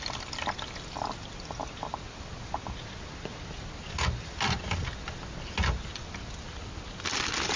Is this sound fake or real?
real